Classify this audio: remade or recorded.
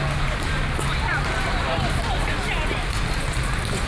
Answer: recorded